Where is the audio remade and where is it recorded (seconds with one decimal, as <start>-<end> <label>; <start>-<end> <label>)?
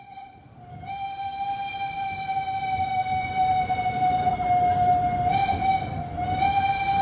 0.0-7.0 recorded